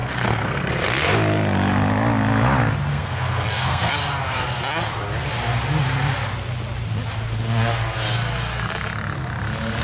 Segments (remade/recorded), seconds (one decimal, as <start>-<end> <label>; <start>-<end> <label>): 0.0-0.7 remade; 0.7-2.9 recorded; 2.9-3.9 remade; 3.9-9.8 recorded